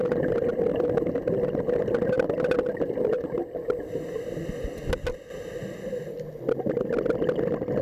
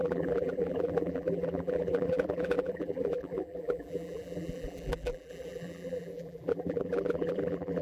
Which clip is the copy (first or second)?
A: second